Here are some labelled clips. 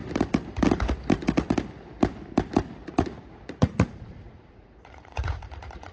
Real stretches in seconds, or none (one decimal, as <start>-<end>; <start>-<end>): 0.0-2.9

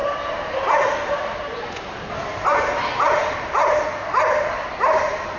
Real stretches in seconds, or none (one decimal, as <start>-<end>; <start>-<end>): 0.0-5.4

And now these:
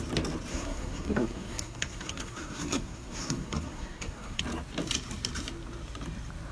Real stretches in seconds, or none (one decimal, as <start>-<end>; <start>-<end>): 0.0-0.5; 4.4-6.5

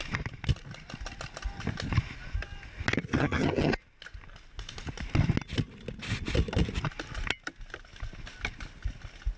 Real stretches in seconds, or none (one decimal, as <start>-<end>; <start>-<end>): 0.0-3.2; 3.7-9.4

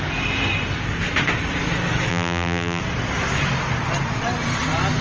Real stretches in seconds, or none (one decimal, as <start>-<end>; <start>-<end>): 0.0-2.1; 2.8-5.0